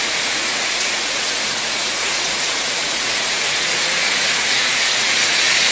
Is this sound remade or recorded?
remade